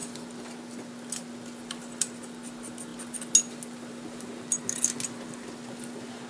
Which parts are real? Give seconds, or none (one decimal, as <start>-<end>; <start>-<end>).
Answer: 0.0-6.3